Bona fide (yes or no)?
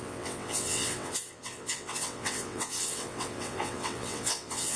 no